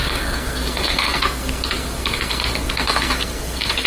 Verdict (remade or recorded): remade